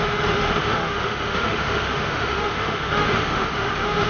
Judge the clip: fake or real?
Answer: fake